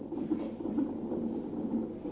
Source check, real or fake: real